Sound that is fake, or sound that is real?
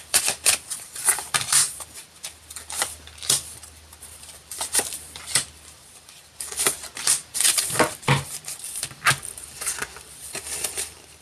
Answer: fake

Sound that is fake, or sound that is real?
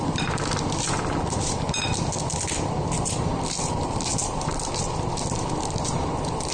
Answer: fake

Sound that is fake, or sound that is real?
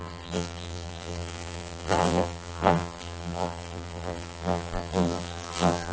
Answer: fake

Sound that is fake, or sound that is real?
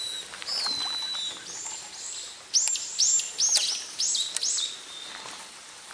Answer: real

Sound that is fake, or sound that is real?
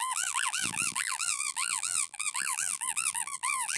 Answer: fake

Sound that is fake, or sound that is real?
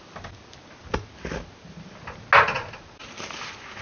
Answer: real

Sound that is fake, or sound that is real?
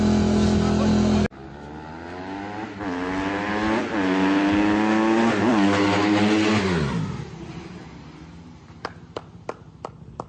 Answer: real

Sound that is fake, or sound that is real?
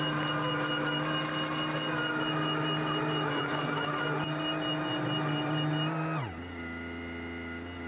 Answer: real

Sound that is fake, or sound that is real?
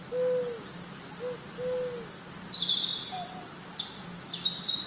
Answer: real